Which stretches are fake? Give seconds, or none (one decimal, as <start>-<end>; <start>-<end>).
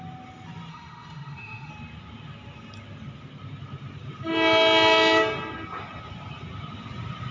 0.7-1.7